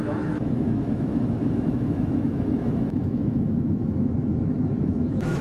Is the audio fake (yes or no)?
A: yes